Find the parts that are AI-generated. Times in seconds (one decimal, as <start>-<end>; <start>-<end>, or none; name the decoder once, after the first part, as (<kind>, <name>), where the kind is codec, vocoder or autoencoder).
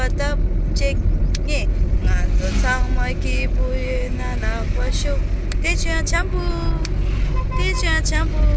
none